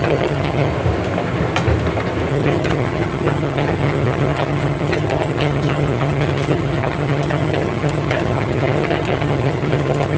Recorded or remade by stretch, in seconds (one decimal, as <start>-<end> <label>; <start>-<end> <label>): 0.0-0.7 remade; 0.7-2.3 recorded; 2.3-10.2 remade